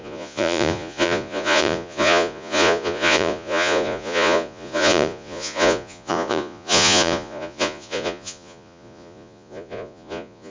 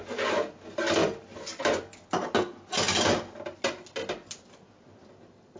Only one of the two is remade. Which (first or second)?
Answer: first